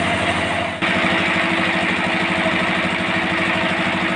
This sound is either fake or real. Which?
real